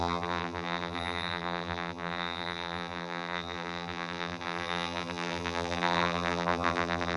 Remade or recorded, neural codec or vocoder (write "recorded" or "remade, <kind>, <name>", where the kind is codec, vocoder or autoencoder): remade, vocoder, BigVGAN v2